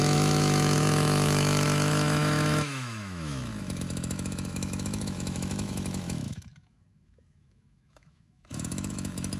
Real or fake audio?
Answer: fake